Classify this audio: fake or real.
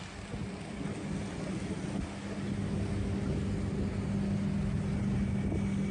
real